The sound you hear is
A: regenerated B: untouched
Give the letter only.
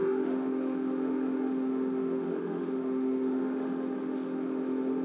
A